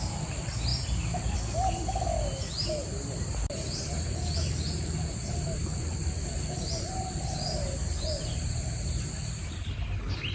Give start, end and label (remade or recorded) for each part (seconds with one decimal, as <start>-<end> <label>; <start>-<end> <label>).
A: 0.0-0.7 recorded; 0.7-2.1 remade; 2.1-2.6 recorded; 2.6-4.5 remade; 4.5-5.6 recorded; 5.6-6.9 remade; 6.9-10.3 recorded